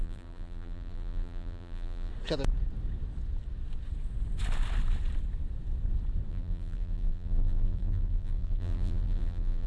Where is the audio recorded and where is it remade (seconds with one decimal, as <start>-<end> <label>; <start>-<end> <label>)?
0.0-2.1 remade; 2.1-6.3 recorded; 6.3-9.7 remade